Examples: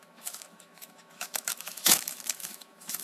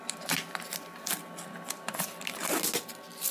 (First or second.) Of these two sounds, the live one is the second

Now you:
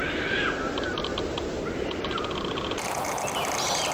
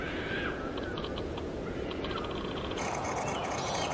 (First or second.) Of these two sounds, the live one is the first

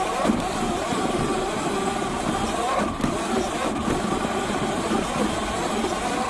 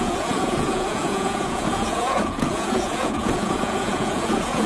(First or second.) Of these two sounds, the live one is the first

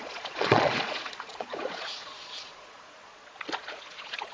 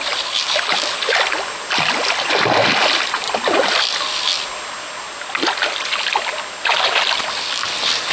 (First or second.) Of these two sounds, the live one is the second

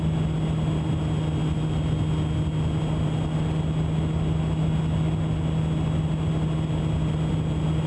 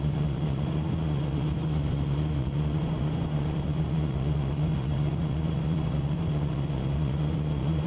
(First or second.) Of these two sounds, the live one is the first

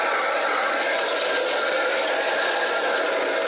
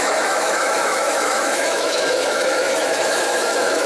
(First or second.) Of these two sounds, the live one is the first